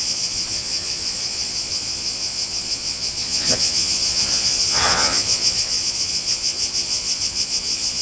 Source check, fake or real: fake